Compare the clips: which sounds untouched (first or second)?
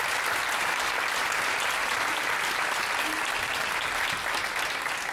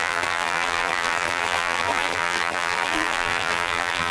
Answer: first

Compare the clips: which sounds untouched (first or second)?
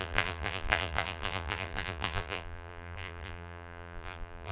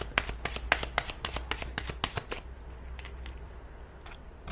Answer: second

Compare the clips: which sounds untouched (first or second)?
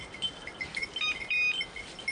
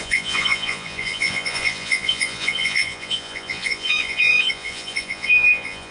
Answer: first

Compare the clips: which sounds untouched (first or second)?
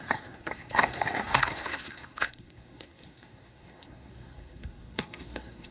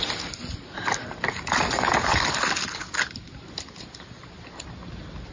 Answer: second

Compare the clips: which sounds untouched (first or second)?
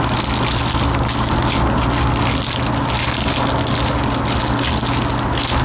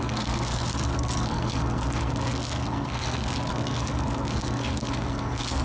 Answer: first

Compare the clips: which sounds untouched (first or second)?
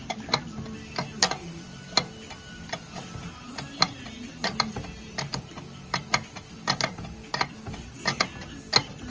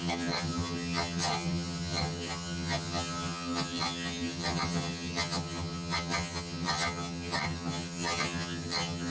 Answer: first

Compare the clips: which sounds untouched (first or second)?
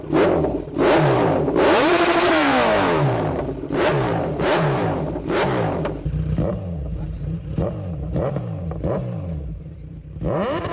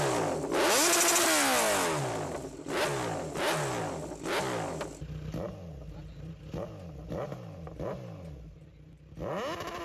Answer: second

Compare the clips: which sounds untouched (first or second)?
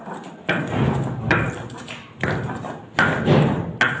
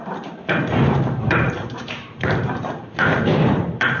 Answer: first